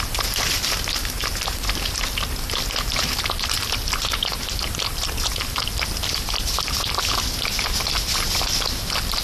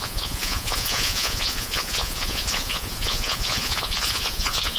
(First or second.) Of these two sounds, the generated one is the second